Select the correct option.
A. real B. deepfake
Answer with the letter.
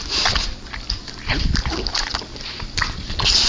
A